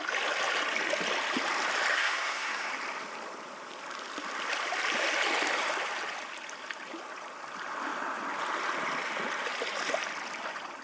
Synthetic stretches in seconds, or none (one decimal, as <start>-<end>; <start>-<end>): 1.9-2.7